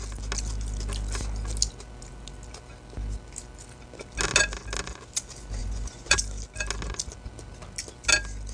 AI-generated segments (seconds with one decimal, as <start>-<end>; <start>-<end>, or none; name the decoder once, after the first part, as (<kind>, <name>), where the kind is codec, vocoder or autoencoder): 5.6-6.2 (vocoder, Vocos)